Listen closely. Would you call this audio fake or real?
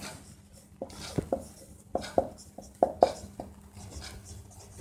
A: real